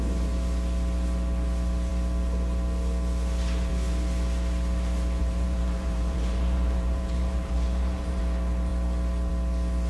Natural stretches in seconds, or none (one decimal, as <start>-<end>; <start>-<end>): 0.0-5.2; 8.2-9.9